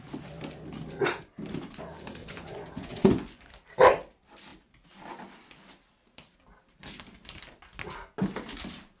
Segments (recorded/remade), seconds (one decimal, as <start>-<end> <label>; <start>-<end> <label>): 0.0-2.2 recorded; 2.2-3.5 remade; 3.5-9.0 recorded